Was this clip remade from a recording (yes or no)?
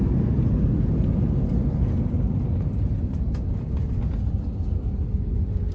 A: no